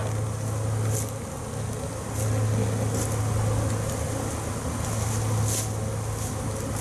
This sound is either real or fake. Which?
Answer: real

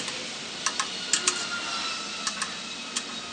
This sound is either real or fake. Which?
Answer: real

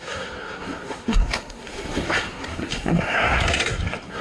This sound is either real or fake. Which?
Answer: fake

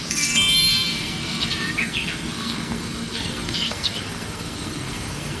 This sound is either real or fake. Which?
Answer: fake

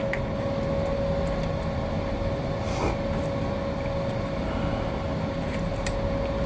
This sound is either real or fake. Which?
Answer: real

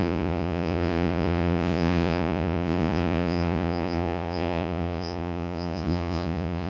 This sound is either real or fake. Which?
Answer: fake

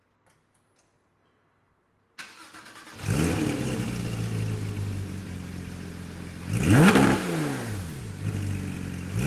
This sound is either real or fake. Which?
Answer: real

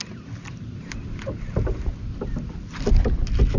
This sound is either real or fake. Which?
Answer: real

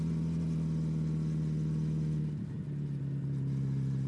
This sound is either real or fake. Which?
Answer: real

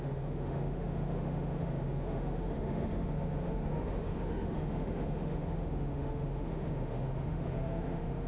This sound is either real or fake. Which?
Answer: fake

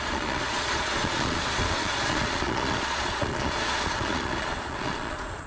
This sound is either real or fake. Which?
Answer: fake